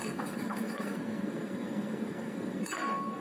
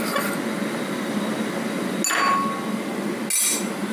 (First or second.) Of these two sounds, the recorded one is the second